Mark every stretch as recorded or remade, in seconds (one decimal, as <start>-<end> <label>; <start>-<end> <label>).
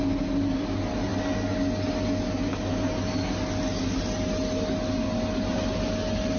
0.0-6.4 recorded